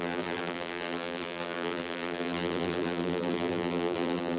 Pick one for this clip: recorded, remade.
remade